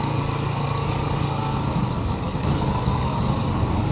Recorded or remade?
remade